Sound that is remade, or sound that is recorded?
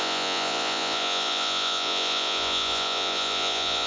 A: remade